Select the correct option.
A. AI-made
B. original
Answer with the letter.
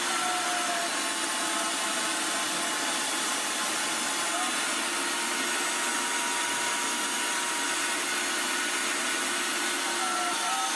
B